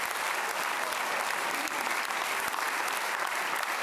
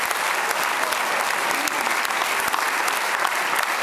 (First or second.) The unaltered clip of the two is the second